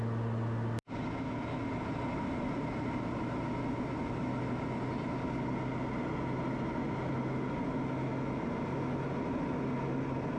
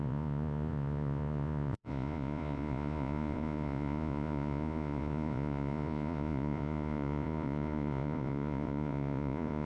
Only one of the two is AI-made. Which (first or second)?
second